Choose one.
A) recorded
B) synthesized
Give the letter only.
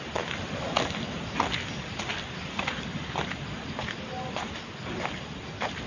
A